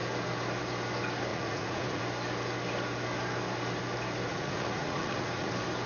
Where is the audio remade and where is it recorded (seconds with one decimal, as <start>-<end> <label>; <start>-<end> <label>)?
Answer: 0.0-1.3 recorded; 1.3-2.0 remade; 2.0-4.3 recorded; 4.3-5.5 remade; 5.5-5.9 recorded